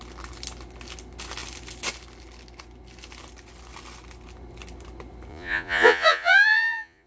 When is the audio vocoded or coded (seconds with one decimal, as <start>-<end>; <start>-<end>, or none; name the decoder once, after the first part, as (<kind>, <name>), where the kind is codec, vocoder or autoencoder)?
5.3-7.1 (vocoder, Vocos)